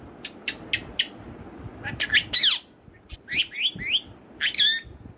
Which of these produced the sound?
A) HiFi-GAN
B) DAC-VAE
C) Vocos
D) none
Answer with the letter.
D